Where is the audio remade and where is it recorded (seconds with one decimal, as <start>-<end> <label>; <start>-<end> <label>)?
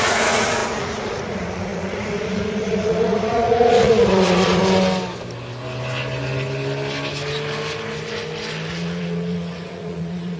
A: 0.0-4.6 remade; 4.6-8.7 recorded; 8.7-10.4 remade